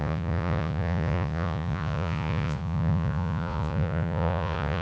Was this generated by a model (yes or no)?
yes